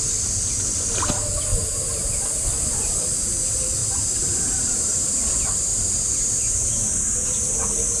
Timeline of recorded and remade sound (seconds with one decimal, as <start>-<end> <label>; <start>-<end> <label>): 0.0-1.5 recorded; 1.5-2.1 remade; 2.1-3.8 recorded; 3.8-5.3 remade; 5.3-5.7 recorded; 5.7-6.9 remade; 6.9-8.0 recorded